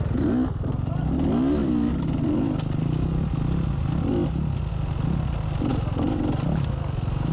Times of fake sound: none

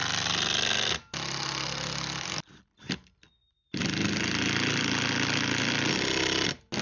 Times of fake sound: none

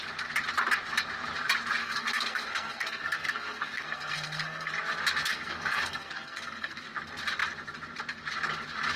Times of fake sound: 1.8-4.7; 5.2-6.8